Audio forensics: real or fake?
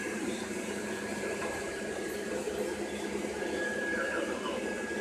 fake